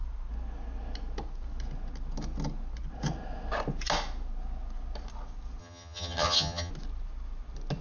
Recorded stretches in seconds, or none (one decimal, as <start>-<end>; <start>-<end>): 0.0-5.6; 6.7-7.8